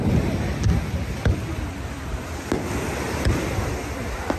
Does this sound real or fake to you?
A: real